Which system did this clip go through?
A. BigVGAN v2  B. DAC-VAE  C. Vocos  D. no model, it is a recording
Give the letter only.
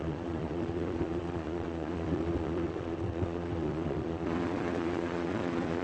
C